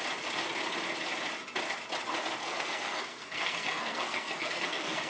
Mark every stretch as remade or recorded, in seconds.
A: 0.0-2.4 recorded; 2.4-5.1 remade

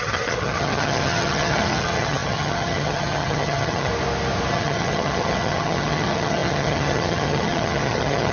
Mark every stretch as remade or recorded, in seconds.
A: 0.0-3.9 remade; 3.9-4.5 recorded; 4.5-8.3 remade

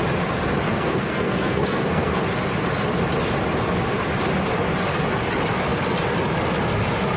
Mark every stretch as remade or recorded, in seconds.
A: 0.0-0.7 recorded; 0.7-2.2 remade; 2.2-7.2 recorded

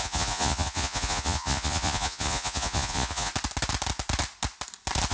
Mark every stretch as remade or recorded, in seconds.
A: 0.0-3.3 remade; 3.3-5.1 recorded

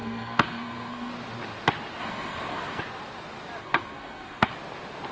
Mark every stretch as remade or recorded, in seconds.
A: 0.0-1.1 remade; 1.1-2.0 recorded; 2.0-2.8 remade; 2.8-3.6 recorded; 3.6-4.5 remade; 4.5-5.1 recorded

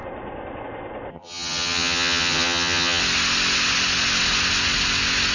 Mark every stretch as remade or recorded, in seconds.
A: 0.0-1.1 recorded; 1.1-3.0 remade; 3.0-5.3 recorded

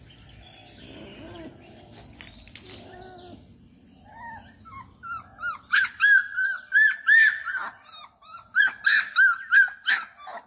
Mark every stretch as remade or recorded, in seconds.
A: 0.0-10.5 recorded